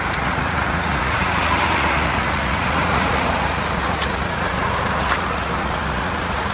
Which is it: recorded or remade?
remade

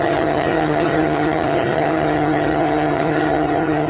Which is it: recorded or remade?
remade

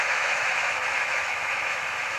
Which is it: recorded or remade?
remade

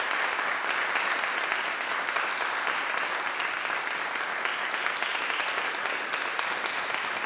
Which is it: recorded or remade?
recorded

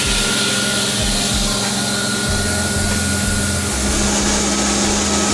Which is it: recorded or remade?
recorded